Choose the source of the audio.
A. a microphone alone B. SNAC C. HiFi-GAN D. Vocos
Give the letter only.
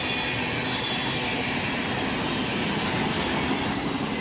A